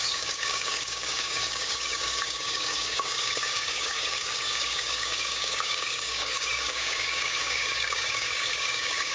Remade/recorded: remade